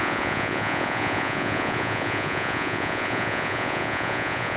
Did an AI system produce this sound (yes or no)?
yes